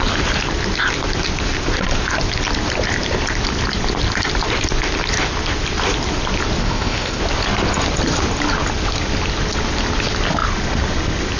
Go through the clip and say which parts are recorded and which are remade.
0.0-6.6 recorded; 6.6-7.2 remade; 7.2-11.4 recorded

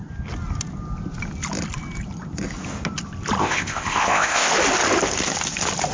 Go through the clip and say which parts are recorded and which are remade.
0.0-3.4 recorded; 3.4-4.5 remade; 4.5-5.9 recorded

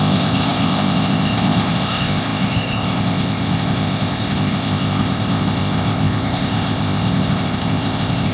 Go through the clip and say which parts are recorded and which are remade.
0.0-8.3 remade

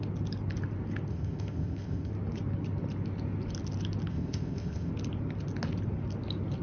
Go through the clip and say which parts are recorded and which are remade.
0.0-1.1 recorded; 1.1-2.1 remade; 2.1-4.1 recorded; 4.1-4.9 remade; 4.9-6.6 recorded

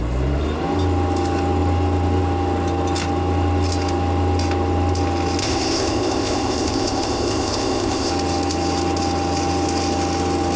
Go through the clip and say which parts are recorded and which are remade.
0.0-5.4 recorded; 5.4-8.1 remade; 8.1-10.6 recorded

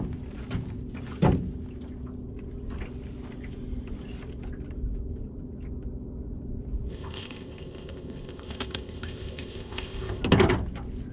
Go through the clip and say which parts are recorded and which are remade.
0.0-6.9 recorded; 6.9-10.2 remade; 10.2-11.1 recorded

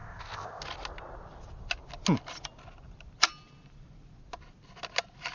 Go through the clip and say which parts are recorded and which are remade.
0.0-0.6 remade; 0.6-5.3 recorded

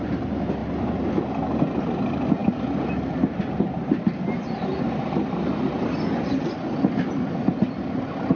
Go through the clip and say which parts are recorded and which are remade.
0.0-8.4 recorded